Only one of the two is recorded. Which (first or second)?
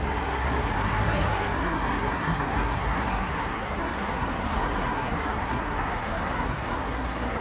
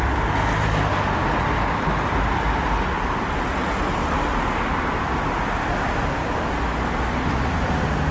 second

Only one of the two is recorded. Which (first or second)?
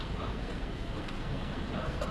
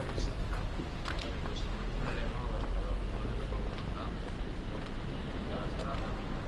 second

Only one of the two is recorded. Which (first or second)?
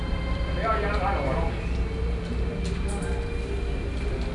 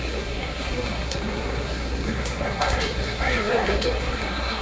first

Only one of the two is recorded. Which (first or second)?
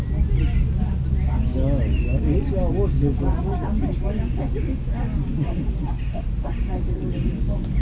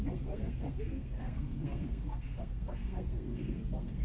first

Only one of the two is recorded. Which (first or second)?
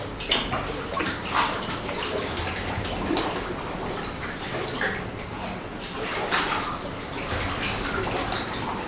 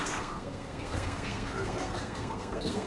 first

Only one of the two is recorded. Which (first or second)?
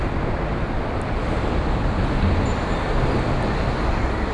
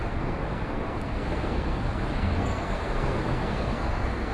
first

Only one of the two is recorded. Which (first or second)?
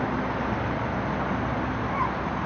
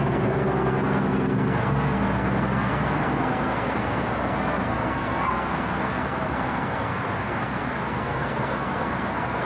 first